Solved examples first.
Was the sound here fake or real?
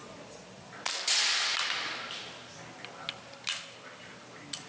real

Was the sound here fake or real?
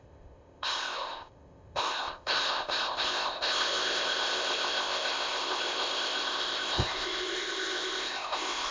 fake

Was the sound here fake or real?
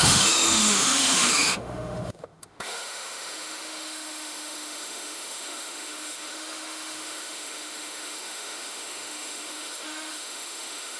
fake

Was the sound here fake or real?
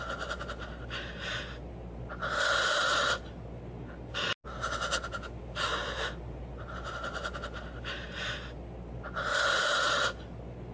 real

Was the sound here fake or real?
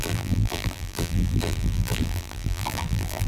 fake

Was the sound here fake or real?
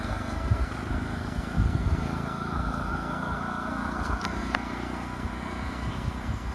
fake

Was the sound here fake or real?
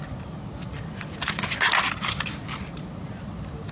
real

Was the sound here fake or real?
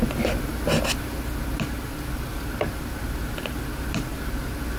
real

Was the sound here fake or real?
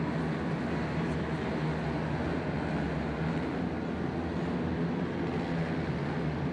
real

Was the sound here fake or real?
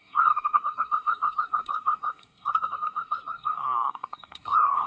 fake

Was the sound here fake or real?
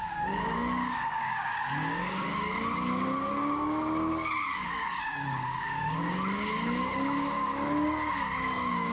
fake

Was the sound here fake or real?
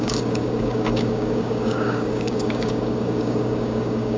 fake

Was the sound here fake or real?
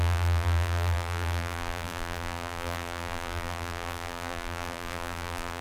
fake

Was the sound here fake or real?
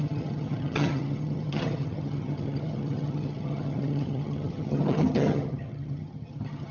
fake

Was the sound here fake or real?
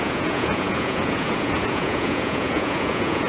fake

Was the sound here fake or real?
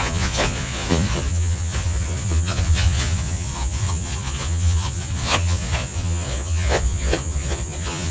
fake